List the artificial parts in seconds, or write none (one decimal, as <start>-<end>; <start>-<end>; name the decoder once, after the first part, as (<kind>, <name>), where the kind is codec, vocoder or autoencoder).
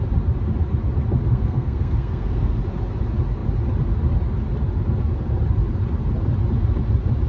1.3-2.6 (codec, SNAC)